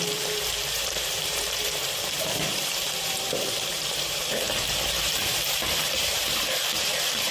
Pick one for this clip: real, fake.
fake